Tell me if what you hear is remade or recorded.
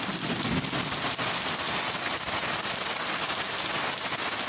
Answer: recorded